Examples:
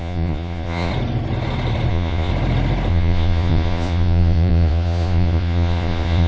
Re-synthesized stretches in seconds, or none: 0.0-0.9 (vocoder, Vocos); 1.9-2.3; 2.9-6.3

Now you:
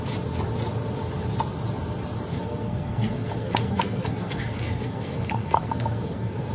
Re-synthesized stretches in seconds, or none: 2.3-6.5 (codec, SNAC)

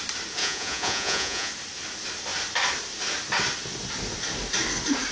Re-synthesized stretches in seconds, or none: 0.4-1.5 (vocoder, Vocos)